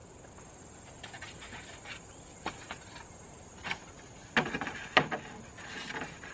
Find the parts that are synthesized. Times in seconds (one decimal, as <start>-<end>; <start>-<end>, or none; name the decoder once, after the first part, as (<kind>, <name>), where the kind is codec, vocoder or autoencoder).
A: 0.0-0.6 (vocoder, BigVGAN v2); 2.3-5.5